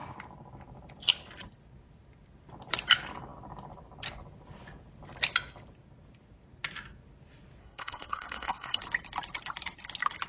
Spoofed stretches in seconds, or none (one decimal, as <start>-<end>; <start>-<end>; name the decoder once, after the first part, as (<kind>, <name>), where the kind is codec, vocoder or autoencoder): 7.6-8.8 (codec, SNAC)